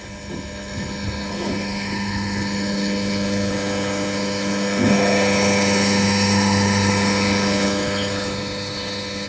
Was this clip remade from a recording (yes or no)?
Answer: yes